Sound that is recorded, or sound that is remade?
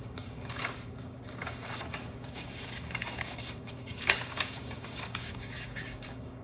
remade